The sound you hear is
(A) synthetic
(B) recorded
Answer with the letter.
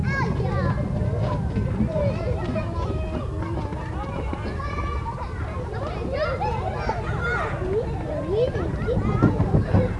B